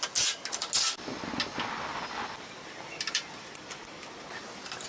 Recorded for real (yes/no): yes